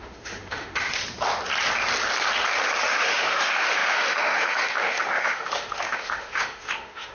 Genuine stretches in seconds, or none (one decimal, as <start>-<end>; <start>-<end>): 1.0-2.9